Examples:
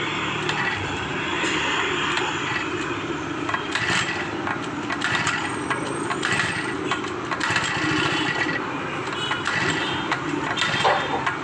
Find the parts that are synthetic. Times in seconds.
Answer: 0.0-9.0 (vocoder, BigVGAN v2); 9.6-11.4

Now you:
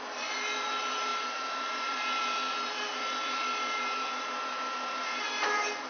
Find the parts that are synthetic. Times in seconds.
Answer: 0.0-5.9 (vocoder, BigVGAN v2)

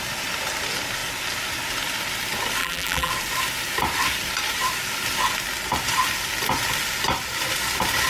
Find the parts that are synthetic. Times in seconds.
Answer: 2.6-3.1 (vocoder, BigVGAN v2)

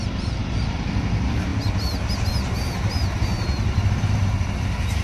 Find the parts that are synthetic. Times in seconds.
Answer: 0.4-1.0 (vocoder, BigVGAN v2)

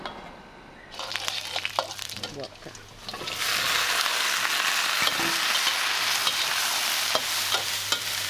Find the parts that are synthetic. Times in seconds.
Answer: 1.3-2.2 (vocoder, BigVGAN v2); 6.2-6.8

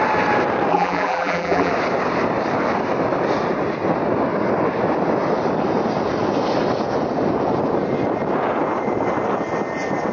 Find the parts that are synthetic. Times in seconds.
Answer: 0.7-1.7 (vocoder, BigVGAN v2)

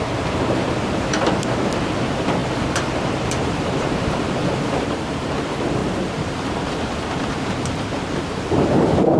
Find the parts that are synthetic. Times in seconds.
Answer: 0.0-9.2 (vocoder, BigVGAN v2)

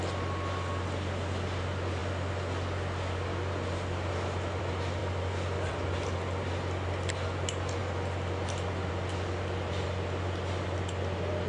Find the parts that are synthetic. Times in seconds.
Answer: none